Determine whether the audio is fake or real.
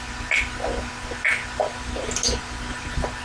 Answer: real